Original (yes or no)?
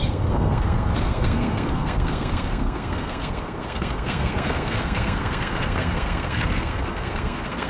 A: no